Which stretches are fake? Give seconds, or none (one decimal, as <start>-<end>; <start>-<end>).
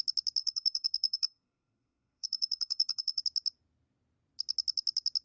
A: 0.4-3.2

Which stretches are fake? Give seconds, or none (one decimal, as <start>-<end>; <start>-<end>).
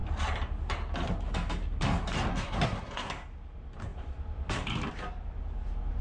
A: 2.3-3.1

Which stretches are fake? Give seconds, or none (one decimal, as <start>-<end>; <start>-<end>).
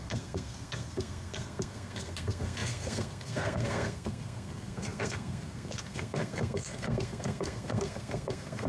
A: 0.0-8.7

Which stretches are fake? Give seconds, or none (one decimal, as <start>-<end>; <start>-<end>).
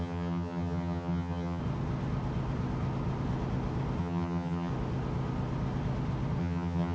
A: 0.0-1.6; 4.0-4.7; 6.4-6.9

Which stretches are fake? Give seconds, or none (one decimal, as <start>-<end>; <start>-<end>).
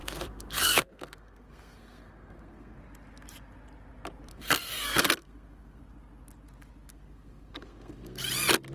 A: 0.0-2.8; 4.3-5.8; 6.9-8.2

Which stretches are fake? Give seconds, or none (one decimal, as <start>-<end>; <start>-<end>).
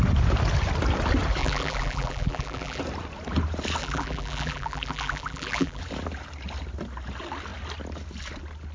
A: 1.4-2.8; 3.8-5.8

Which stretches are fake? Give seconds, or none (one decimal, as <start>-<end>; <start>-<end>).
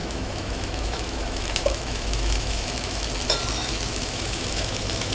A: 0.0-3.1; 3.6-5.1